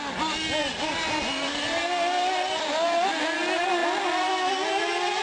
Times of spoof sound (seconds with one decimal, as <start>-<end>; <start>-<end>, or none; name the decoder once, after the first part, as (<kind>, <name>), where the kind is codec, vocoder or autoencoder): 0.7-1.8 (vocoder, BigVGAN v2)